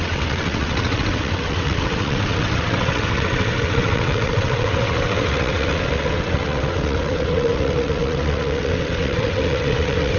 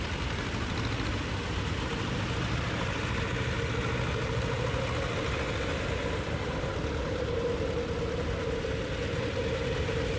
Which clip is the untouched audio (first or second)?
second